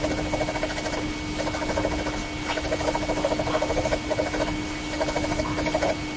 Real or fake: real